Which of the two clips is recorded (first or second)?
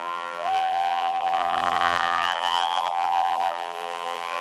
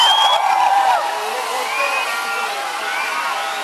second